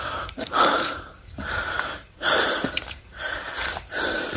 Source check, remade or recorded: remade